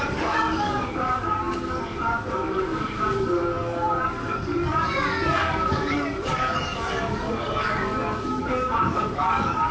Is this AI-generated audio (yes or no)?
yes